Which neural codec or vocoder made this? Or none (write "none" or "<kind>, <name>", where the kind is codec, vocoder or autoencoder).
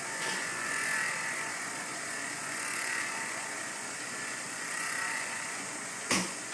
vocoder, Vocos